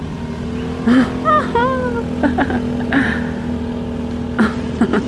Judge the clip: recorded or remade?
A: recorded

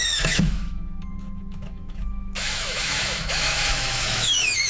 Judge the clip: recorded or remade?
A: remade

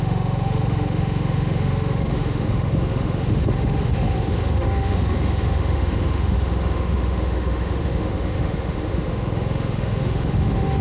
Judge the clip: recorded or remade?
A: remade